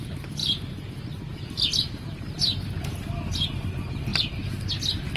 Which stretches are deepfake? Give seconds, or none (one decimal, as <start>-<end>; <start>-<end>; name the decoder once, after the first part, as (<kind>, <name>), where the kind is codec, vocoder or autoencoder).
none